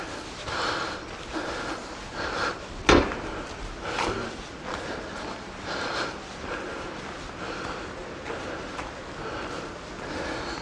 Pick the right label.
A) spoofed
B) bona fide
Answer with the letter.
B